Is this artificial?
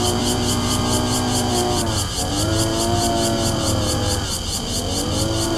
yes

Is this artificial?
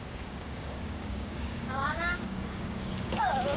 yes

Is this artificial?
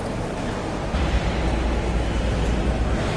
no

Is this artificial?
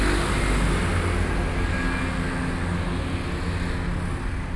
no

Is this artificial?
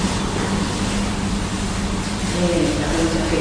no